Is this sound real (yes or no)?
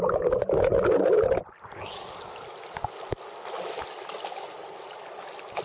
yes